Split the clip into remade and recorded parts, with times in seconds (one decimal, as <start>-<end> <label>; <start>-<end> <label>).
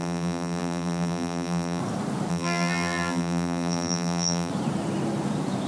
0.0-1.8 remade; 1.8-2.3 recorded; 2.3-4.5 remade; 4.5-5.7 recorded